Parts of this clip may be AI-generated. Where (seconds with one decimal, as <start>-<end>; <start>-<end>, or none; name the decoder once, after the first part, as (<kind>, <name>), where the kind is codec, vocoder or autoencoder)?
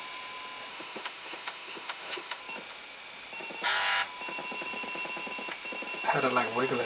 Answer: 0.7-2.4 (autoencoder, DAC-VAE)